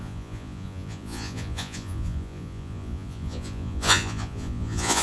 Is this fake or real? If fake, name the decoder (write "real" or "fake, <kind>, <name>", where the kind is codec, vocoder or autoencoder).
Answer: fake, vocoder, Vocos